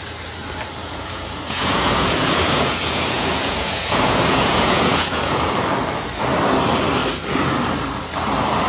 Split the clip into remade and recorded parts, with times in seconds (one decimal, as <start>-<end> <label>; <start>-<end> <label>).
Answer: 0.0-0.8 recorded; 0.8-5.5 remade; 5.5-8.7 recorded